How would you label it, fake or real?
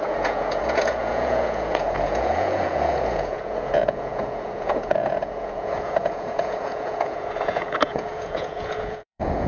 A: fake